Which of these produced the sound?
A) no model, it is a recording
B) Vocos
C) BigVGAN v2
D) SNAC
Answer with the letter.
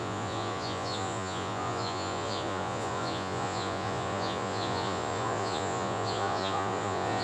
B